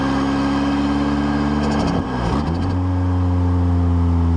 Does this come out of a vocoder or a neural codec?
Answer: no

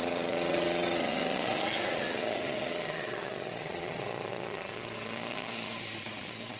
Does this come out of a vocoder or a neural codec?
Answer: yes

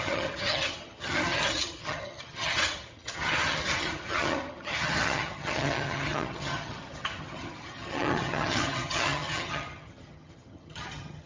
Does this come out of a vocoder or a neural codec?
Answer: yes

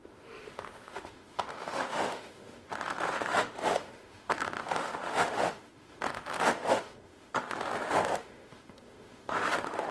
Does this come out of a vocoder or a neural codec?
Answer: yes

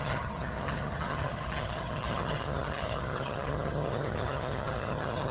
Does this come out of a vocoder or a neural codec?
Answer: yes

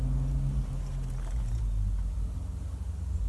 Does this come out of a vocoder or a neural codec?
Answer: no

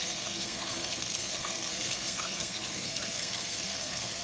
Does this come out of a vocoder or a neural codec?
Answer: yes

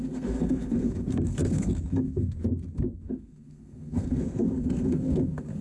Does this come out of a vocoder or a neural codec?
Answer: yes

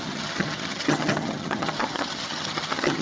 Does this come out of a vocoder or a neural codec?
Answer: yes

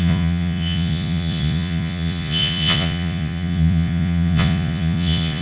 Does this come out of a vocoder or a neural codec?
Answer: yes